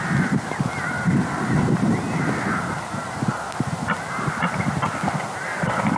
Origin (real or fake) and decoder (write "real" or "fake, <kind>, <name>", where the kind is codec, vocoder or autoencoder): real